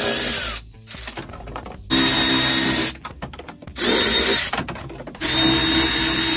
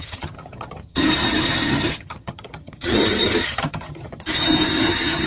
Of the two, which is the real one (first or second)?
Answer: first